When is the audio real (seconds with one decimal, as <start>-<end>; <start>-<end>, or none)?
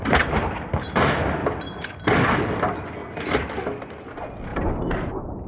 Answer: 0.7-4.5